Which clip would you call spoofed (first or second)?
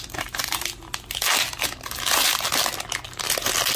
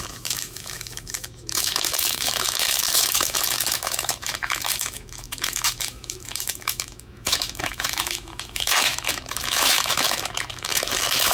second